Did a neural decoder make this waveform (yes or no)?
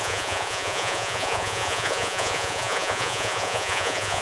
yes